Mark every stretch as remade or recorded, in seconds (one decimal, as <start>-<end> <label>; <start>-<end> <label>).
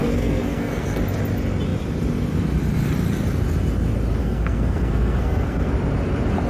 0.0-1.0 remade; 1.0-4.2 recorded; 4.2-5.7 remade; 5.7-6.5 recorded